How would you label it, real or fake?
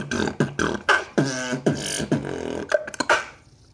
real